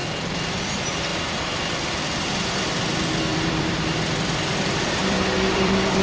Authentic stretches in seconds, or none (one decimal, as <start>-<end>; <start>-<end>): 0.0-1.1; 2.2-3.3